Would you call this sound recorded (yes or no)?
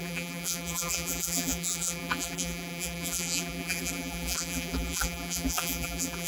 no